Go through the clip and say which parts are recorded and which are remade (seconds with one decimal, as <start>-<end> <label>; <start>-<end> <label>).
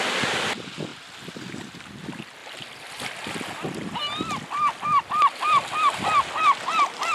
0.0-7.1 recorded